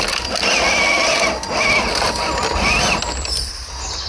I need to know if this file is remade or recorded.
recorded